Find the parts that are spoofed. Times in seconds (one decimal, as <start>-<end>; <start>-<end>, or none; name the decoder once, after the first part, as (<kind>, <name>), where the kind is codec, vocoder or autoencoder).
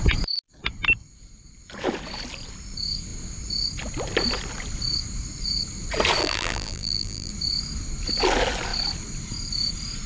6.2-7.3 (vocoder, BigVGAN v2)